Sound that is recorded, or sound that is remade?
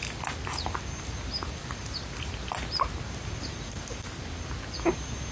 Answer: recorded